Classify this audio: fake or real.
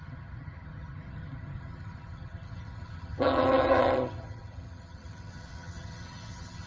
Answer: fake